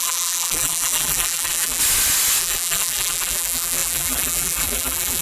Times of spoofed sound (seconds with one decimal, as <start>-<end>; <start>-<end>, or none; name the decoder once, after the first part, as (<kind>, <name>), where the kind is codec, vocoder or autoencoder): 0.0-1.8 (vocoder, BigVGAN v2); 2.4-5.2